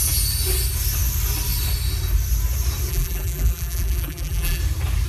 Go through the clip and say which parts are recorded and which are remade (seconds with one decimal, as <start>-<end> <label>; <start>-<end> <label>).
0.0-2.9 recorded; 2.9-4.6 remade; 4.6-5.1 recorded